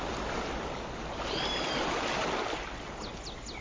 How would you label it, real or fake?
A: real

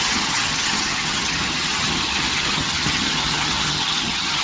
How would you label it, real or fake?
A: fake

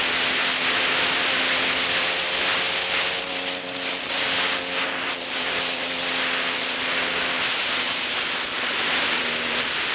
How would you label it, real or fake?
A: real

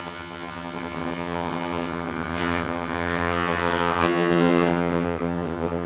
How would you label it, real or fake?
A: fake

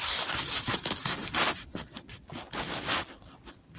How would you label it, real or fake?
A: real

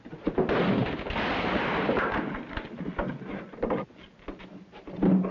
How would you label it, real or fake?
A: real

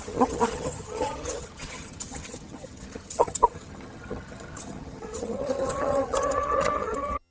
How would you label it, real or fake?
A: fake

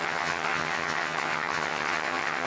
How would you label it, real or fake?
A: fake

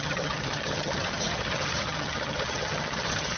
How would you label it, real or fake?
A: fake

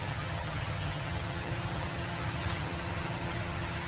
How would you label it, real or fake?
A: fake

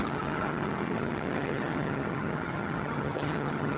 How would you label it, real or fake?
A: fake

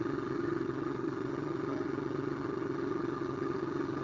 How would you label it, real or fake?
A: fake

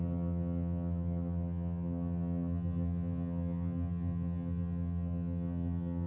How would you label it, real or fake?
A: fake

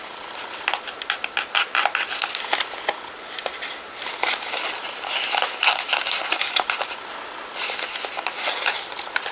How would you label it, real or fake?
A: real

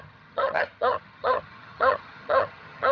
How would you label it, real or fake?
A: fake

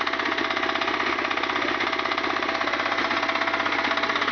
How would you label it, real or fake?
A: real